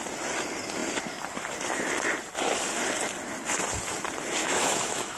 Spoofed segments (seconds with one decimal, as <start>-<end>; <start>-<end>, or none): 4.4-5.2